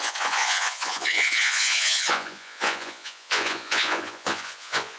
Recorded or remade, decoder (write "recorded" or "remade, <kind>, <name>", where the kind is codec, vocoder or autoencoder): remade, vocoder, Vocos